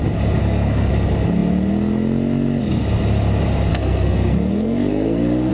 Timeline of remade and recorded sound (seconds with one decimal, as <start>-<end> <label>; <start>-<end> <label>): 0.0-0.4 recorded; 0.4-0.9 remade; 0.9-3.7 recorded; 3.7-5.5 remade